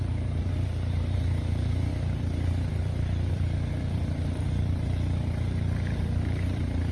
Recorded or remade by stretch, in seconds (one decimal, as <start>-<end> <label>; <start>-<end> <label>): 0.0-1.9 remade; 1.9-2.7 recorded; 2.7-6.9 remade